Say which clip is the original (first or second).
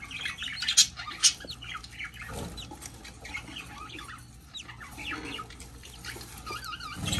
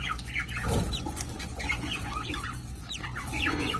first